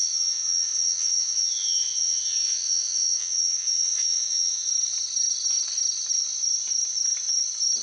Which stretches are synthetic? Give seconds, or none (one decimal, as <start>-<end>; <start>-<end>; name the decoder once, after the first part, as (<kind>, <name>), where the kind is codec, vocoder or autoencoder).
0.0-4.7 (vocoder, WaveNeXt)